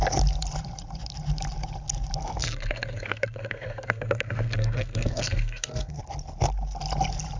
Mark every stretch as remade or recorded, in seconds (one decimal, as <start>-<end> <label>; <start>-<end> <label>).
0.0-2.2 recorded; 2.2-6.0 remade; 6.0-7.4 recorded